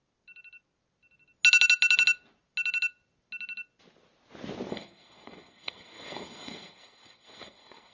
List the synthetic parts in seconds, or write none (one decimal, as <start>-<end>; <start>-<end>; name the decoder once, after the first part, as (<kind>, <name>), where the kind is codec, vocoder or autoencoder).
4.7-7.9 (codec, SNAC)